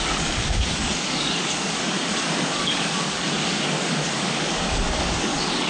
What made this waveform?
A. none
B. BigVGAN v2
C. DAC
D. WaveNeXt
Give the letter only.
C